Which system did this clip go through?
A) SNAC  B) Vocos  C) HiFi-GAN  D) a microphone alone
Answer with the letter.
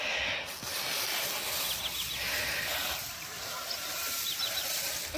D